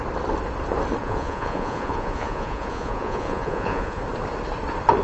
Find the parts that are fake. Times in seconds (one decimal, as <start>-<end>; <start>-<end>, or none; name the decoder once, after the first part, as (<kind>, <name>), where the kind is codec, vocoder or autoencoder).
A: 1.0-4.0 (vocoder, Vocos)